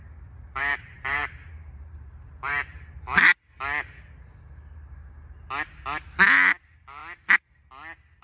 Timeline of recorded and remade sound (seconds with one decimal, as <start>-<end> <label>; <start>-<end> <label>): 0.0-3.3 remade; 3.3-6.6 recorded; 6.6-7.0 remade; 7.0-8.2 recorded